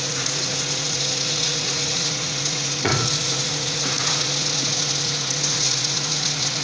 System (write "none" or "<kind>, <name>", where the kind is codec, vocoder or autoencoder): vocoder, Vocos